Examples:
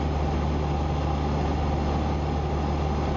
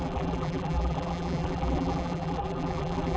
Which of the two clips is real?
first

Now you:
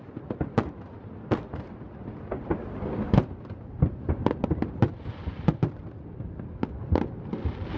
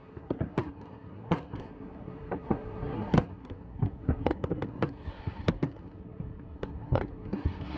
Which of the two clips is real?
first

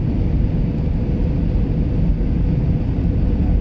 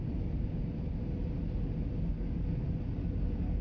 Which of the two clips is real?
second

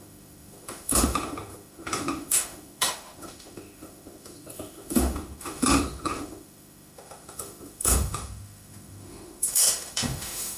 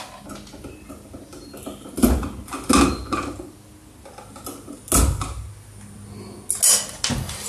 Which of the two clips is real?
second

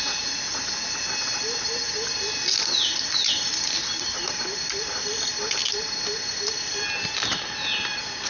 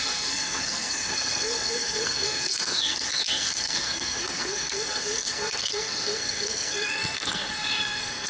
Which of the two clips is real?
first